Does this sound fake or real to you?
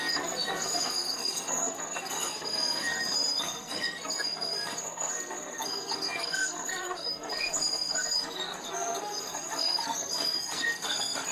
fake